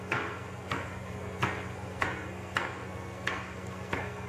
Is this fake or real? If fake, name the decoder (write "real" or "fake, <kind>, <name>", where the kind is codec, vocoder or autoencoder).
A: fake, codec, SNAC